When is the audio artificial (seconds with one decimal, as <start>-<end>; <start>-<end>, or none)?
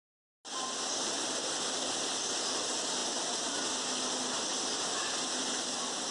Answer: none